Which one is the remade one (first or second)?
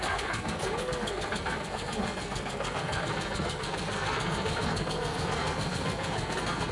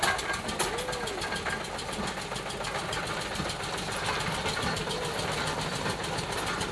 first